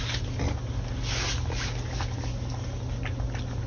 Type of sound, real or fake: real